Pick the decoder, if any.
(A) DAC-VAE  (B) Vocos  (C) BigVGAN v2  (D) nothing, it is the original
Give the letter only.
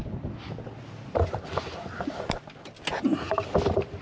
D